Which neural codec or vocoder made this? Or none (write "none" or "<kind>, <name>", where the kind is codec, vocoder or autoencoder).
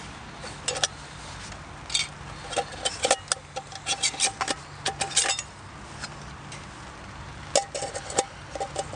none